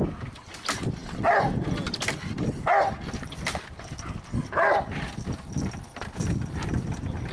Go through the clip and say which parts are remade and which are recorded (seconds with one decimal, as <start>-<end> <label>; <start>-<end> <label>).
0.0-7.3 recorded